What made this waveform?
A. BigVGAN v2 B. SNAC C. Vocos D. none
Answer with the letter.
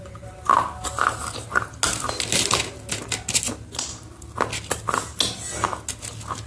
D